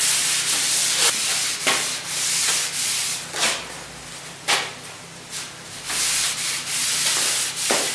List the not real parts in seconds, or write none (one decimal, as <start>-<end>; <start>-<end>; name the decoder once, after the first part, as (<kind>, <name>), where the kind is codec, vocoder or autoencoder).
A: none